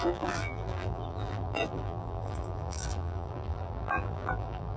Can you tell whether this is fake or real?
fake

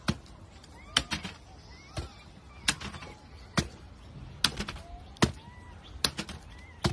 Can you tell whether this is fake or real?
real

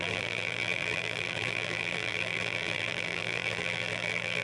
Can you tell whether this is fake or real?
fake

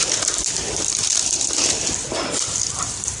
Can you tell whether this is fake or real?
real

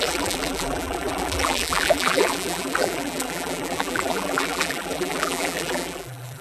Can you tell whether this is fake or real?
fake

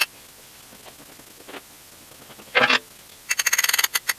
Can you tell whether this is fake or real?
real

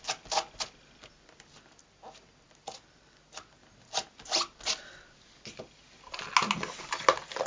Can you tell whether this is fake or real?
real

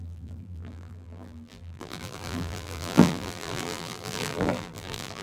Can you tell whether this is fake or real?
fake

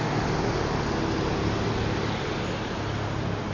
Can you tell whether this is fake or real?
real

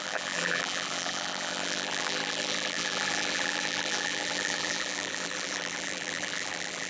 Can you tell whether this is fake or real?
fake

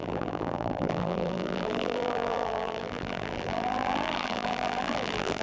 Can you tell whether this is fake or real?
fake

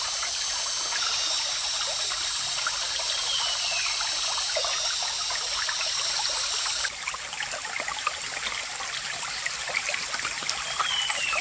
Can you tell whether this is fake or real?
real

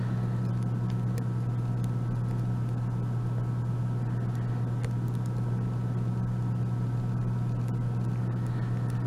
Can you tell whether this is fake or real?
real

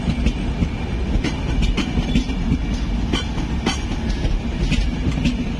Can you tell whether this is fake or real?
real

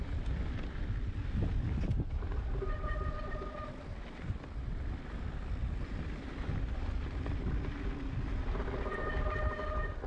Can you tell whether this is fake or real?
real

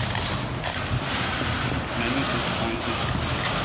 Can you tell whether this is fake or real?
real